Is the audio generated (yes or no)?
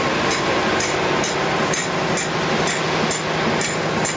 no